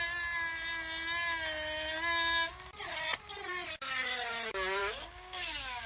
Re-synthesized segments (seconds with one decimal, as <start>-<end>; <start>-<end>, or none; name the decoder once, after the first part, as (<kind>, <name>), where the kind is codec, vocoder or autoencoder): 4.8-5.9 (codec, DAC)